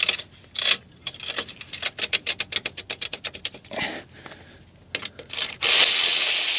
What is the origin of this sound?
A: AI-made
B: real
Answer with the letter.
B